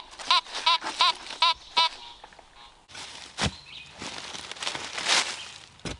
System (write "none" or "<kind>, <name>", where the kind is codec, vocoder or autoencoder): none